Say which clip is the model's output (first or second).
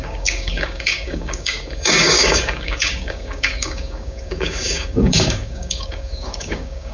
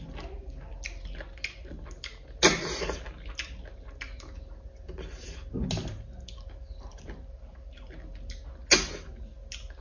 first